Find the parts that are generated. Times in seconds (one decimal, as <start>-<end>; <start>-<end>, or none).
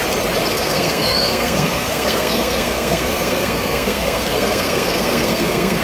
0.5-5.8